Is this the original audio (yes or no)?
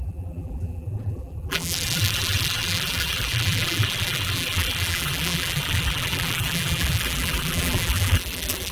no